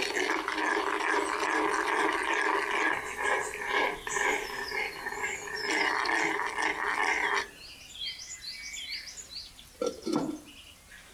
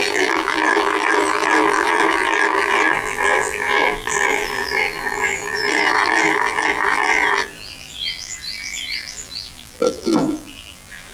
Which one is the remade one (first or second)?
second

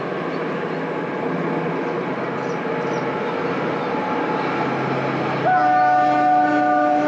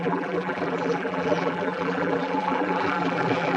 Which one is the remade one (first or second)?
second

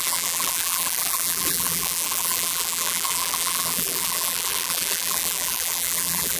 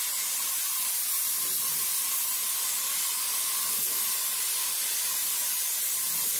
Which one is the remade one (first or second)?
first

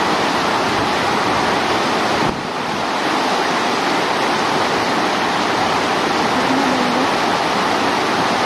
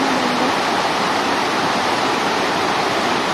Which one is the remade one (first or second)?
second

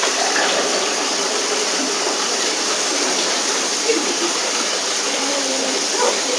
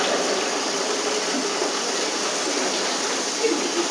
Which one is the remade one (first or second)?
first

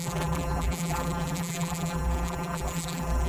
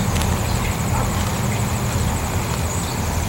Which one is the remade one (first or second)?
first